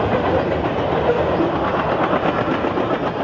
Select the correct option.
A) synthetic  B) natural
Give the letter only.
B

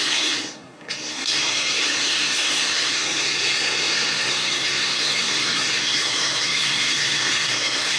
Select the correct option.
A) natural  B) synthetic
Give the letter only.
B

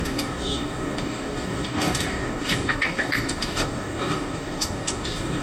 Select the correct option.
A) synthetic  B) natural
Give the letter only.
A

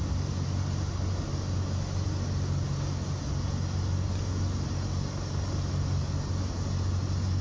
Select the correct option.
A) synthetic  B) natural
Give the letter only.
B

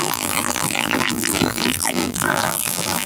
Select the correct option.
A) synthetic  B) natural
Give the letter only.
A